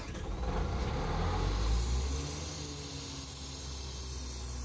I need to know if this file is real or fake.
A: real